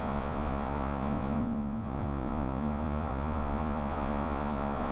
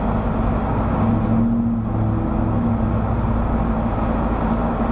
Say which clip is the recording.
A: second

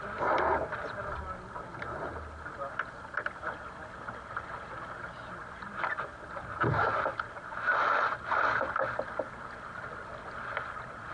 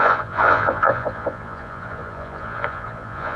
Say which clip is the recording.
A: first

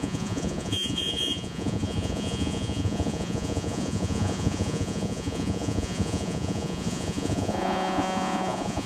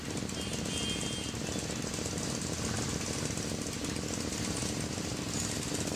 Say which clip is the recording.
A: second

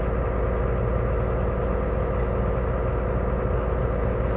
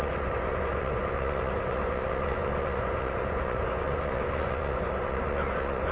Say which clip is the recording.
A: first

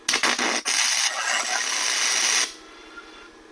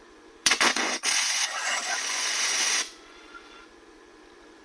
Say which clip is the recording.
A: first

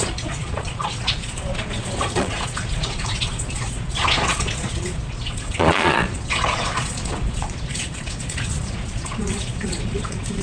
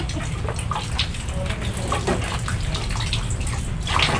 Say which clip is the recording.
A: second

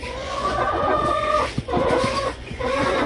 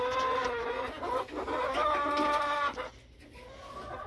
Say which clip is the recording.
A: second